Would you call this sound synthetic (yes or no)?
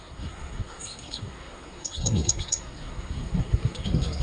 yes